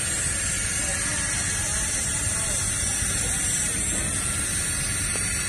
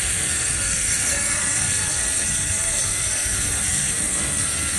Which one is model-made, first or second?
second